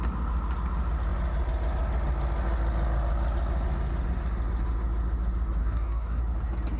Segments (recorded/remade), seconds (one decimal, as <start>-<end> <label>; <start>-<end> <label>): 0.0-5.6 recorded; 5.6-6.2 remade; 6.2-6.8 recorded